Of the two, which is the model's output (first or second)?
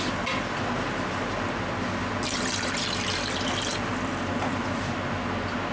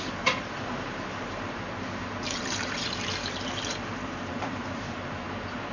second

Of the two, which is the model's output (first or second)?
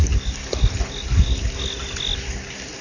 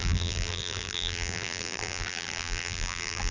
second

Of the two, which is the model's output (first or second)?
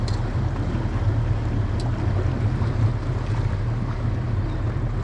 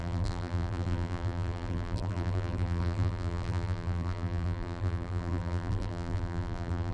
second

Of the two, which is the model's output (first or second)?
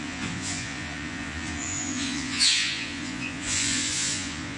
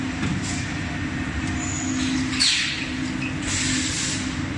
first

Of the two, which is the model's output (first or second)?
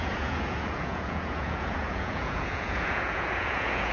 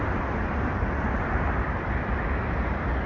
first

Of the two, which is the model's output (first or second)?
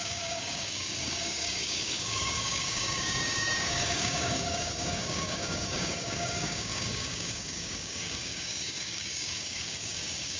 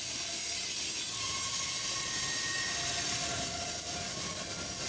first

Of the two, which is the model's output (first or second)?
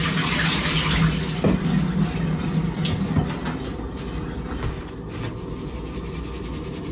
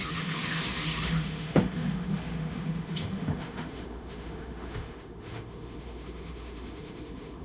second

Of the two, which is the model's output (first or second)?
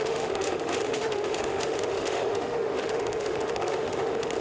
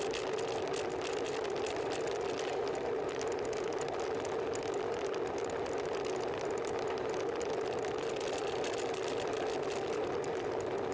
first